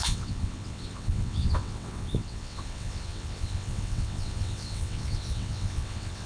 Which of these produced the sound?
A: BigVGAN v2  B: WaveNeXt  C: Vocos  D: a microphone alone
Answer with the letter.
B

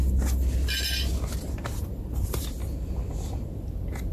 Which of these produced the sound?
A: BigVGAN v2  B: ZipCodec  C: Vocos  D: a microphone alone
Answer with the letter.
D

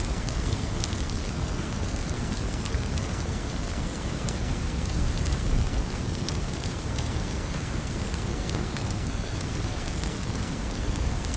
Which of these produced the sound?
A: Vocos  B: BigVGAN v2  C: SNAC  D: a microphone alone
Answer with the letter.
C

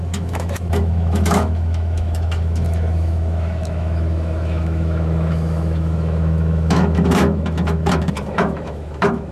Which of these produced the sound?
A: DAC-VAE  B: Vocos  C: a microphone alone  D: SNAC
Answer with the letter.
A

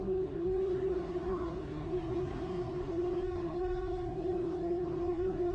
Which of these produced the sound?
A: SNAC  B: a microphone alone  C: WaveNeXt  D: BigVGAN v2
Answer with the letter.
A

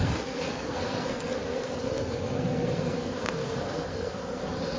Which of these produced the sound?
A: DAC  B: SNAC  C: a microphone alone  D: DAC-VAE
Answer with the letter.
B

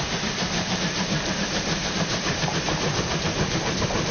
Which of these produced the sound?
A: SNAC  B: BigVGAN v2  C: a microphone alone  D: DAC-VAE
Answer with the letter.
B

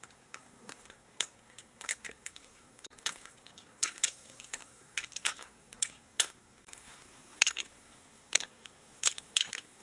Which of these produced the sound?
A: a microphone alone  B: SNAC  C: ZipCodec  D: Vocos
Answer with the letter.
B